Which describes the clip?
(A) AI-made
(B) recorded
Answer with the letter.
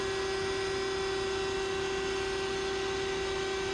B